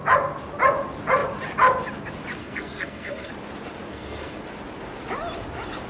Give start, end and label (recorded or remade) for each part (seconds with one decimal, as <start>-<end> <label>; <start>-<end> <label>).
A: 0.0-2.4 recorded; 2.4-3.3 remade; 3.3-3.9 recorded; 3.9-4.4 remade; 4.4-5.9 recorded